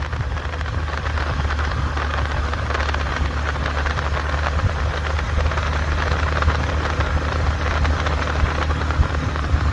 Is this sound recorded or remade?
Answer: recorded